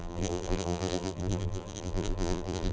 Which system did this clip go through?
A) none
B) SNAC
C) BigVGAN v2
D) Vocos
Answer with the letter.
C